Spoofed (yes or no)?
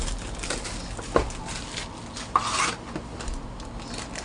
no